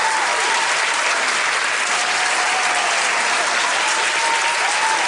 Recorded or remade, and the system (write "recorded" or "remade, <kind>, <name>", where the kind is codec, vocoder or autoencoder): recorded